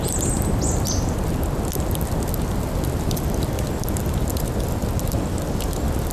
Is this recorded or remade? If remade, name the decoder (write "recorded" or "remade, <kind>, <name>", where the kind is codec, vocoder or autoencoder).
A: recorded